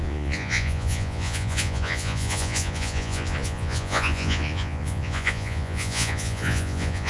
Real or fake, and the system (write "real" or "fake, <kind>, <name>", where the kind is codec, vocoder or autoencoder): fake, vocoder, Vocos